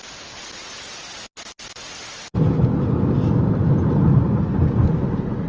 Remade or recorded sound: recorded